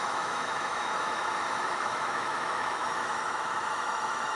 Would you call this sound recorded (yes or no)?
no